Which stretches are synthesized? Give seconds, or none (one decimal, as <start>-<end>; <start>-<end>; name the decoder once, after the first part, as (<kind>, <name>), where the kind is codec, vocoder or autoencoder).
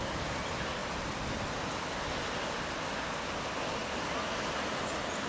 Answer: none